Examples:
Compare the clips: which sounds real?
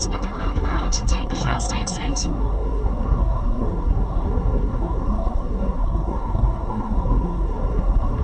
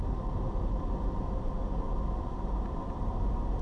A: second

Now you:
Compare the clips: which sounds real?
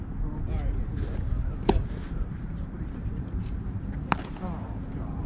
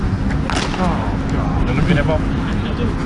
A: second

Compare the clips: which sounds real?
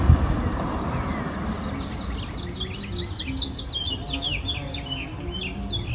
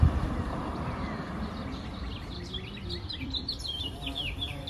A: first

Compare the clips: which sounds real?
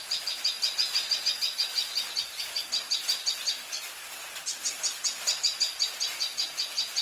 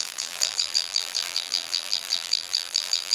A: first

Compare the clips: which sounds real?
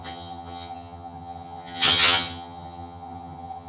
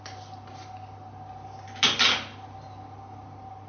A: second